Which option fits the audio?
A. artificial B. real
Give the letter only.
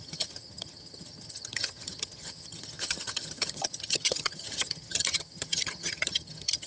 A